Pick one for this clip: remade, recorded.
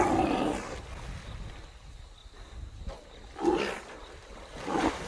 recorded